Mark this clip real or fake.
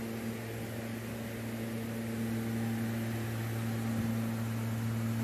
real